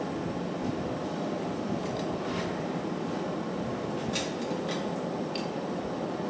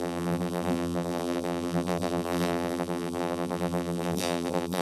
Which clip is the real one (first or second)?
first